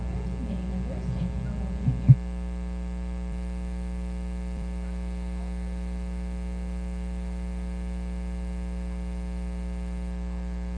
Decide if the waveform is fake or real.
real